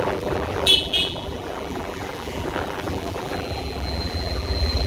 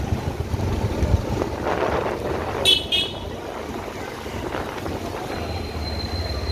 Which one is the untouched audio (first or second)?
second